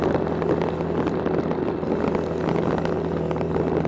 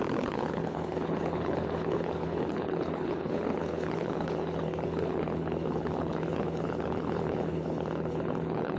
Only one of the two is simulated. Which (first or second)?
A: second